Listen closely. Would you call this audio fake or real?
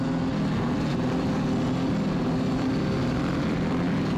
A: real